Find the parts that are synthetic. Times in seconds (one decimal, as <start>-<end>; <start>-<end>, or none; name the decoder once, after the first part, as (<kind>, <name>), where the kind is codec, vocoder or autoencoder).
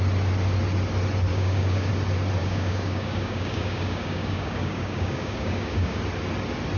1.3-1.9 (codec, DAC); 2.4-6.0